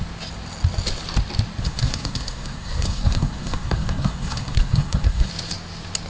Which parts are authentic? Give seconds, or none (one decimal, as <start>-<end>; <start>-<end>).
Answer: 0.0-1.6; 5.3-6.1